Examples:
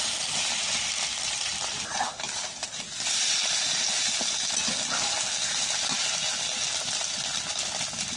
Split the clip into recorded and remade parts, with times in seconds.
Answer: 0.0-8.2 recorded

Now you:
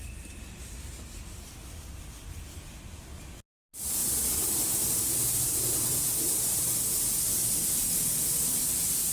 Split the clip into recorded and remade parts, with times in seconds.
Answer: 0.0-0.6 recorded; 0.6-1.5 remade; 1.5-4.0 recorded; 4.0-6.4 remade; 6.4-9.1 recorded